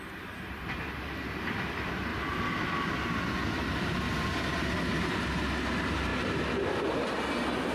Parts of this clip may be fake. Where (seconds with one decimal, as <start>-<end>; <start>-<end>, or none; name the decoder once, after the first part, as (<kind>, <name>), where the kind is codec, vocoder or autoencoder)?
none